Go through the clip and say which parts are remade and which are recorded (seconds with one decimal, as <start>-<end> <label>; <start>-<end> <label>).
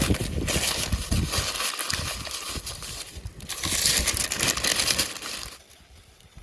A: 0.0-6.4 recorded